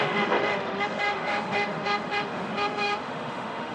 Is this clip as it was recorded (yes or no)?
no